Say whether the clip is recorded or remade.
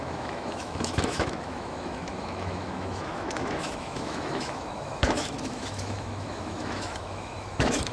remade